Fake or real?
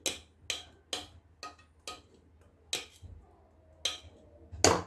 real